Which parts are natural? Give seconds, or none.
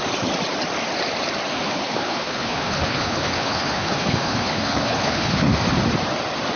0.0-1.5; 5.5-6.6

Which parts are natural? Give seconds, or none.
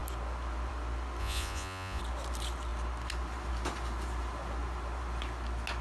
0.0-1.2; 2.0-5.8